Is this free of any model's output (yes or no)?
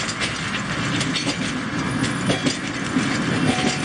yes